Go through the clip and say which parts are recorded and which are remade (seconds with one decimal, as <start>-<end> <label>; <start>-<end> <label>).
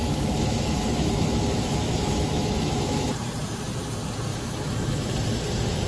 0.0-3.1 remade; 3.1-4.3 recorded; 4.3-5.1 remade; 5.1-5.9 recorded